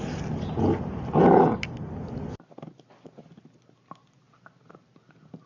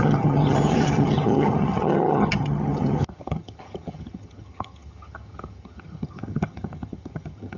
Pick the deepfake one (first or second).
second